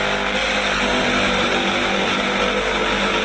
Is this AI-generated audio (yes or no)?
no